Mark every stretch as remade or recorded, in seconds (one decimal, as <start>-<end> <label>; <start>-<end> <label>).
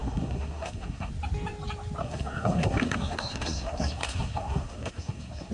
0.0-1.1 remade; 1.1-2.0 recorded; 2.0-5.5 remade